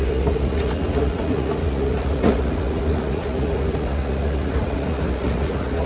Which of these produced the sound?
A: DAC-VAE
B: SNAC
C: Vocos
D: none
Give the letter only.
C